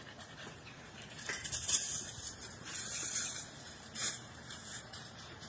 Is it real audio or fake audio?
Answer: fake